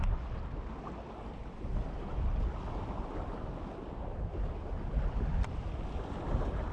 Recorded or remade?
recorded